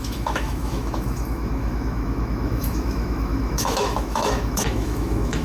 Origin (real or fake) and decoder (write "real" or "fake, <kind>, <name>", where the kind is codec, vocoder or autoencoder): fake, autoencoder, DAC-VAE